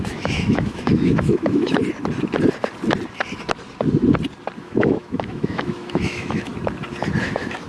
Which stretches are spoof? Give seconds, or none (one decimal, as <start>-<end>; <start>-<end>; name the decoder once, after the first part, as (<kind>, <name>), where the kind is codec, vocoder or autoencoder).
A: 0.0-1.8 (autoencoder, DAC-VAE); 4.6-6.5; 7.2-7.7